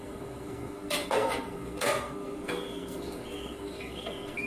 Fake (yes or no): yes